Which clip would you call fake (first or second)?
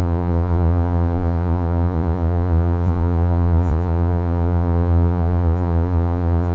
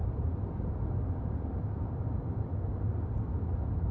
first